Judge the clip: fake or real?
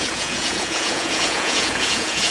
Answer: fake